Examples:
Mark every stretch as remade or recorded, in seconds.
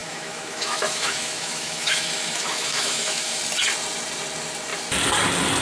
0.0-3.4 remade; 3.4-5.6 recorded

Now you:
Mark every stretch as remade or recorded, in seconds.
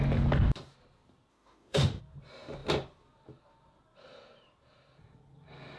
0.0-1.3 recorded; 1.3-2.0 remade; 2.0-5.8 recorded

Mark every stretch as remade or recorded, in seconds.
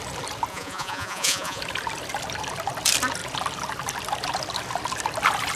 0.0-0.5 recorded; 0.5-1.6 remade; 1.6-5.6 recorded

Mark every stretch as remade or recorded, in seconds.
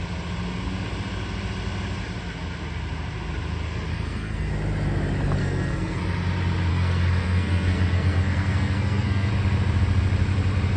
0.0-3.9 recorded; 3.9-4.5 remade; 4.5-5.4 recorded; 5.4-6.0 remade; 6.0-6.7 recorded; 6.7-9.3 remade; 9.3-10.8 recorded